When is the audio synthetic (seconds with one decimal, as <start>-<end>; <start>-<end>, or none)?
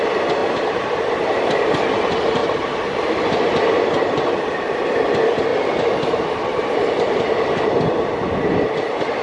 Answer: 0.4-1.0; 2.4-3.2; 5.5-7.0